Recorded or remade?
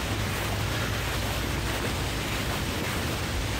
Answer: recorded